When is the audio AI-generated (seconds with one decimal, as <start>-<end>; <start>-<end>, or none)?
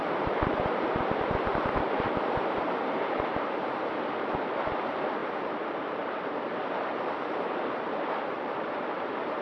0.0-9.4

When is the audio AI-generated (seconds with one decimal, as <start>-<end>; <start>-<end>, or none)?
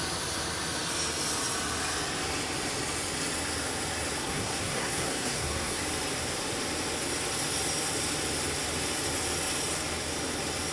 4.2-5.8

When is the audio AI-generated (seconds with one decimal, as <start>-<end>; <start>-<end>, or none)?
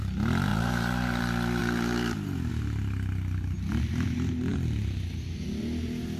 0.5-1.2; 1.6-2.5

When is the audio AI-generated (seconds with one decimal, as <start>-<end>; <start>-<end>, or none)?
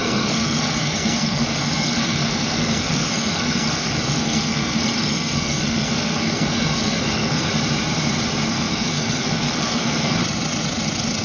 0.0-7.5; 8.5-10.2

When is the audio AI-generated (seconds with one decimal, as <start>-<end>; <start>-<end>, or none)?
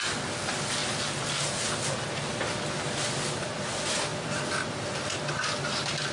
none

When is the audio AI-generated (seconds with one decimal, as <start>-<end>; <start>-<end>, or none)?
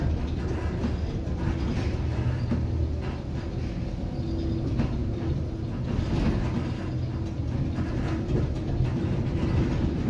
none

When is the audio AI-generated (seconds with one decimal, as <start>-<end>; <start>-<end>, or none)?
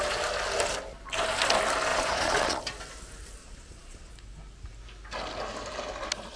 1.9-2.6; 3.4-4.1